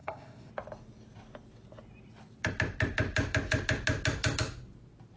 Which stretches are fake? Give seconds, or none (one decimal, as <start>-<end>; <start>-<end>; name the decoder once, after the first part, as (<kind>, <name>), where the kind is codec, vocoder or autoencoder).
0.0-0.5 (codec, SNAC)